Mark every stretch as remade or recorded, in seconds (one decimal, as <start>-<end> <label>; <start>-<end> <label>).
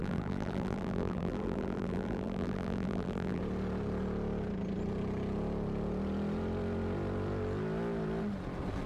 0.0-3.4 remade; 3.4-8.9 recorded